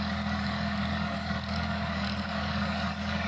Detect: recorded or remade remade